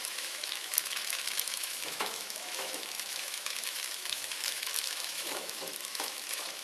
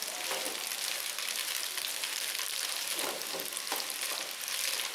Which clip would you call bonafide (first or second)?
second